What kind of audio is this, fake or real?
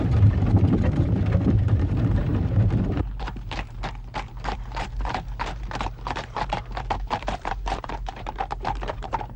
fake